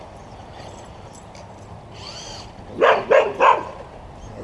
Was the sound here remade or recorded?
recorded